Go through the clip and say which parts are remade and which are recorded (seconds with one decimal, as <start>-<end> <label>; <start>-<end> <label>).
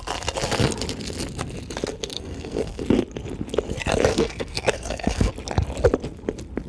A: 0.0-2.1 recorded; 2.1-2.8 remade; 2.8-4.1 recorded; 4.1-5.3 remade; 5.3-6.7 recorded